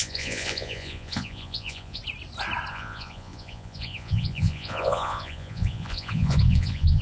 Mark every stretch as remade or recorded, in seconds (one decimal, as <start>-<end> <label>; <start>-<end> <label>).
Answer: 0.0-2.0 remade; 2.0-2.7 recorded; 2.7-7.0 remade